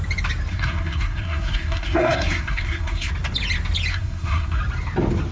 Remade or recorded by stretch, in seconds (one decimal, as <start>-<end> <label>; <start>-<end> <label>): 0.0-0.5 recorded; 0.5-3.1 remade; 3.1-3.9 recorded; 3.9-4.6 remade; 4.6-5.3 recorded